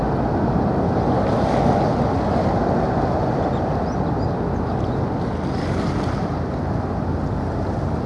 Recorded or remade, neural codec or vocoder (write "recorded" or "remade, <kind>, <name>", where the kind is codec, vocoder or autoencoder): recorded